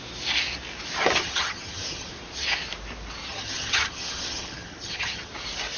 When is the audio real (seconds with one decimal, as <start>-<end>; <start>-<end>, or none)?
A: 0.0-1.2; 2.1-3.2; 5.3-5.8